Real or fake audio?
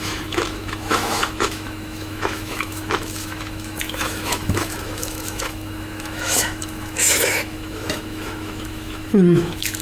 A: fake